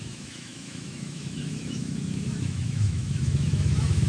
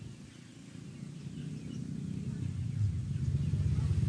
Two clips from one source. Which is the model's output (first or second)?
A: first